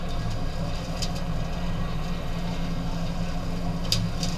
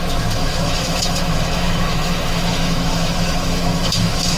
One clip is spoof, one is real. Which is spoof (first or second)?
second